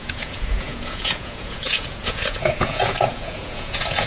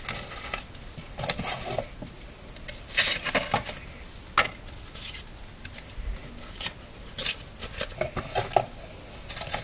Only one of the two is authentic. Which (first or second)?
second